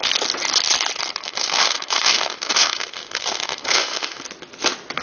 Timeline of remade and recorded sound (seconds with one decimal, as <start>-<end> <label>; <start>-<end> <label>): 0.0-1.2 recorded; 1.2-4.2 remade; 4.2-5.0 recorded